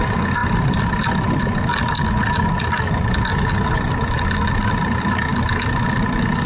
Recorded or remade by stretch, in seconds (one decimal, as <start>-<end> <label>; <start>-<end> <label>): 0.0-6.5 recorded

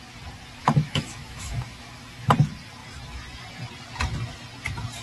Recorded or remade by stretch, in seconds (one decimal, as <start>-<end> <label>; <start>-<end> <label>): 0.0-0.6 recorded; 0.6-2.3 remade; 2.3-5.0 recorded

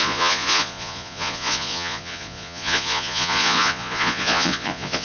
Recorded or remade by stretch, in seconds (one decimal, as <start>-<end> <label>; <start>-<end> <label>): 0.0-5.0 remade

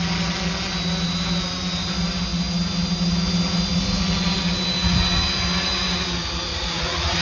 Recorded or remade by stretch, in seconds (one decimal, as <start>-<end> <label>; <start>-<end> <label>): 0.0-6.5 recorded; 6.5-7.2 remade